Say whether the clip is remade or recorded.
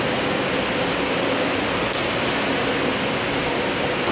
recorded